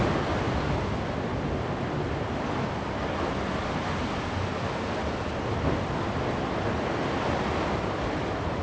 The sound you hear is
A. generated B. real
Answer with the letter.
B